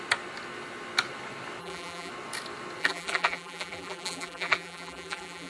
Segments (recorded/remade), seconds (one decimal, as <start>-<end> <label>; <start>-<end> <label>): 0.0-1.6 recorded; 1.6-2.1 remade; 2.1-2.8 recorded; 2.8-5.5 remade